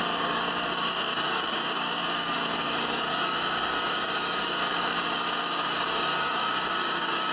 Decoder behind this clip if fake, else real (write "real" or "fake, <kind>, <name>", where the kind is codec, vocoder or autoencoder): fake, codec, DAC